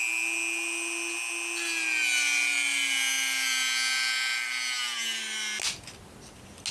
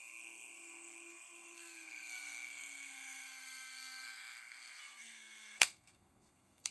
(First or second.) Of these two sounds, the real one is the first